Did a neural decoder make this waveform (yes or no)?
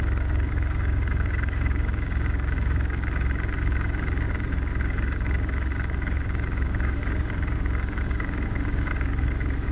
yes